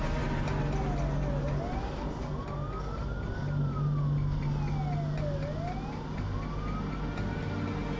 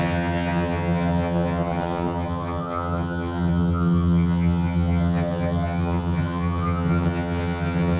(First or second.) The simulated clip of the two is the second